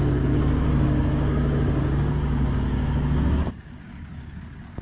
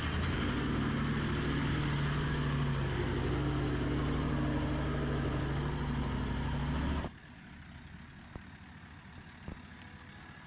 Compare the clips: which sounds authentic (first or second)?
second